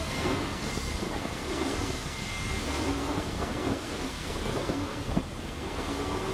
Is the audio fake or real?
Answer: fake